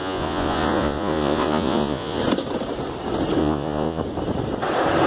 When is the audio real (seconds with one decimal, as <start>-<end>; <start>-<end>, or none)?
2.2-3.4; 4.0-5.1